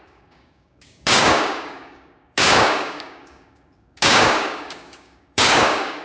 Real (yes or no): no